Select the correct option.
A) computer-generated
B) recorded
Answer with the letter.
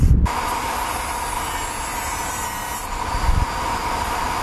B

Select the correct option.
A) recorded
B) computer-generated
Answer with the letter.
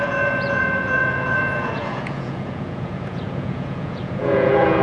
B